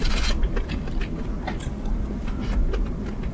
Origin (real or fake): real